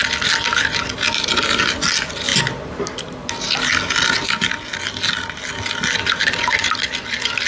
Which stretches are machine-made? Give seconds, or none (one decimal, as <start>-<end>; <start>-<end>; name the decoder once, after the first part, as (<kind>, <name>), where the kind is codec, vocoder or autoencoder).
none